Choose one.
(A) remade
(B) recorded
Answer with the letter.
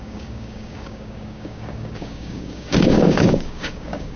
A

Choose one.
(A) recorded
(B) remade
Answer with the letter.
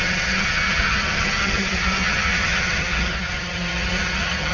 B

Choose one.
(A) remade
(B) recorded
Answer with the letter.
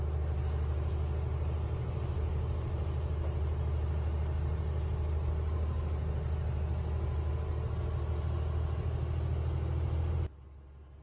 B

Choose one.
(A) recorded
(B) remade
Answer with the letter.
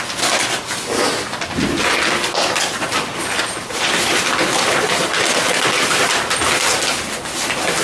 A